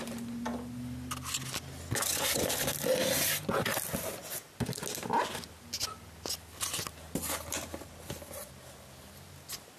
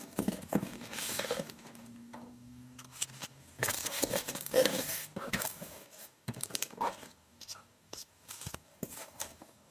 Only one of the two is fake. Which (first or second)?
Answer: second